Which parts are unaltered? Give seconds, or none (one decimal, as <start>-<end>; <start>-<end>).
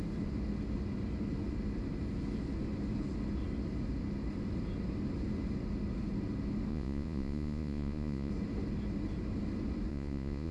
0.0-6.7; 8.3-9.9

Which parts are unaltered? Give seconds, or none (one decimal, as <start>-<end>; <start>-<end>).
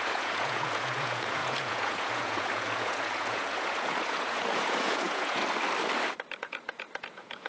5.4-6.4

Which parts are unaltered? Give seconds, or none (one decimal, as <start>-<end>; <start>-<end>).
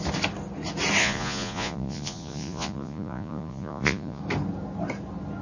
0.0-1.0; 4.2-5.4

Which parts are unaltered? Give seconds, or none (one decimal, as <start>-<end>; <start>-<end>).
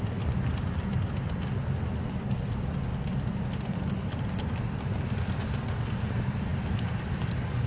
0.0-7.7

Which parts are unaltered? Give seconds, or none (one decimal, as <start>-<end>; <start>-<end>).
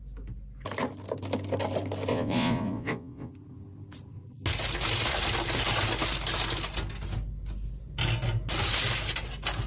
0.0-2.1; 3.3-9.7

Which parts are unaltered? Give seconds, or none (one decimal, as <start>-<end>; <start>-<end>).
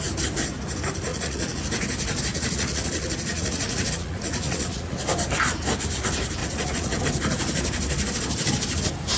0.0-1.1; 1.6-2.3; 5.0-6.4; 7.0-9.2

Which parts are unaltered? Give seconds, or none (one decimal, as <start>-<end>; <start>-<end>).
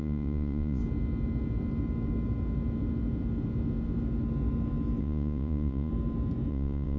0.8-5.0; 5.9-6.5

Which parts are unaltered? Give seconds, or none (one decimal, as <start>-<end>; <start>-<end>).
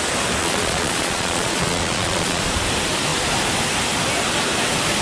0.0-0.4; 2.4-5.0